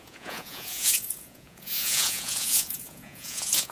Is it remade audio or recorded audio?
remade